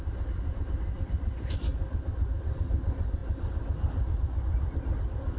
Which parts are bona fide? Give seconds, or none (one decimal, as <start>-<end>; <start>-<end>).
1.7-2.4; 3.2-5.0